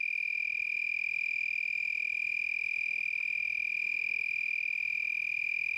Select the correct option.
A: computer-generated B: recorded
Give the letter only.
B